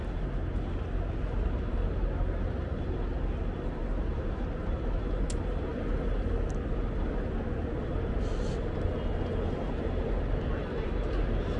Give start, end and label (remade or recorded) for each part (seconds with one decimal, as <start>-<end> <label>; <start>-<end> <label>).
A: 0.0-11.6 recorded